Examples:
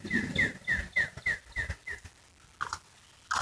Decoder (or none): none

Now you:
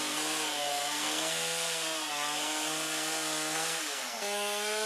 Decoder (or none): codec, SNAC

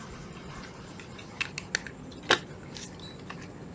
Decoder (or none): none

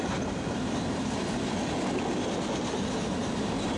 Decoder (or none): none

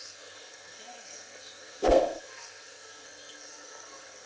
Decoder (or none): codec, SNAC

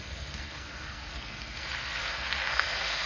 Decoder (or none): codec, SNAC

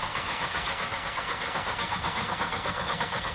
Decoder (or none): codec, SNAC